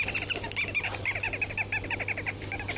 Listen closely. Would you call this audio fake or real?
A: real